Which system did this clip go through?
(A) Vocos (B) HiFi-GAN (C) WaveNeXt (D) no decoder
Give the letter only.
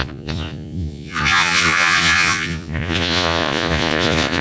A